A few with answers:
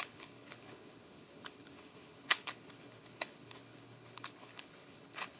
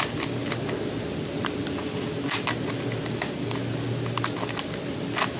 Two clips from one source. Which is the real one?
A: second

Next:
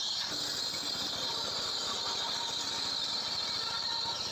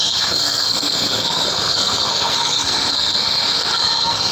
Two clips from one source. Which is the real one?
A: first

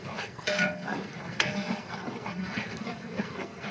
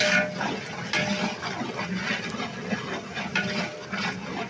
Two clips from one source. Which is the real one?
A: second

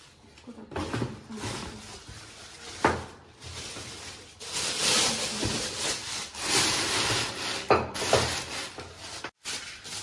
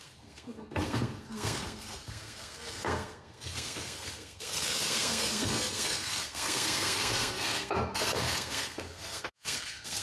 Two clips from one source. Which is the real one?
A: first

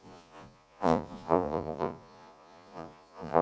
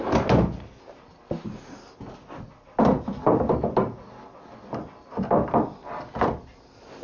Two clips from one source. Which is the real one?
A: second